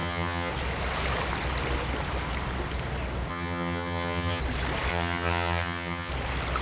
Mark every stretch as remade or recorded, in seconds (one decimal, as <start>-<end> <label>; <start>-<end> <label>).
0.0-0.5 remade; 0.5-3.3 recorded; 3.3-4.4 remade; 4.4-4.9 recorded; 4.9-6.1 remade; 6.1-6.6 recorded